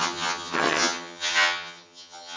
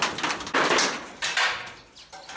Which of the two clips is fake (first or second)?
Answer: first